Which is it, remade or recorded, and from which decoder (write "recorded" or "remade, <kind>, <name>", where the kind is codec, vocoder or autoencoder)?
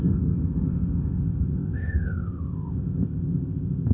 remade, codec, ZipCodec